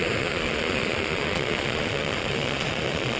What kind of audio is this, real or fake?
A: fake